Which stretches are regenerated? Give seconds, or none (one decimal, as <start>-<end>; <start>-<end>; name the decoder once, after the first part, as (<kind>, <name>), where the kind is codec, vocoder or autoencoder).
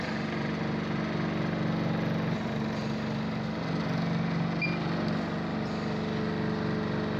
none